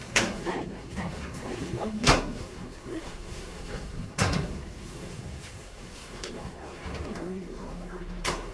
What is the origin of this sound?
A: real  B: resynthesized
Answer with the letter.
B